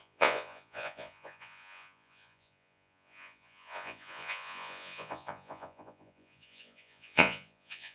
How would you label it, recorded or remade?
remade